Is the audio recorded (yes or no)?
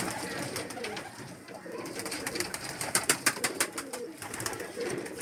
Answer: no